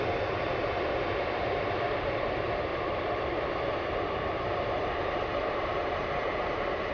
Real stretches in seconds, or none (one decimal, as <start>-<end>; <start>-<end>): 2.7-3.8